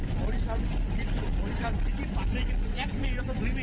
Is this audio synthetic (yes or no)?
no